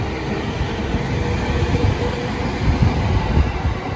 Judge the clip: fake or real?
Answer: real